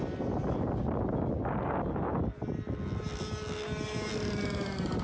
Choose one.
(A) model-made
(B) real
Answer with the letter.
B